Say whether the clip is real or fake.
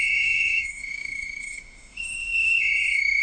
fake